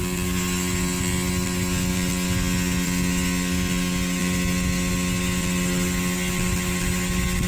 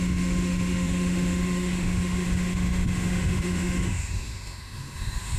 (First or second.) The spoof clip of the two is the second